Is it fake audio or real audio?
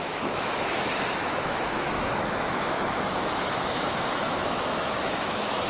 fake